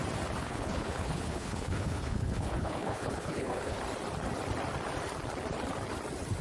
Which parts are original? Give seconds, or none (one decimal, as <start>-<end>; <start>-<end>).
0.0-0.4; 3.8-6.4